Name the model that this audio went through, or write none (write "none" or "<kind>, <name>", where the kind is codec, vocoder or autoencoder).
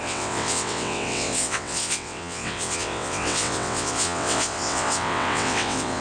vocoder, WaveNeXt